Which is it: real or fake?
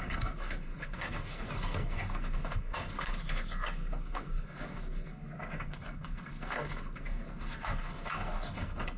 fake